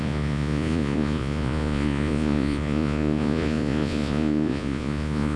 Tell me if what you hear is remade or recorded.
remade